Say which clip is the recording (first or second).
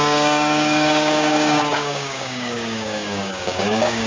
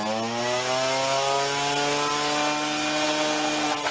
second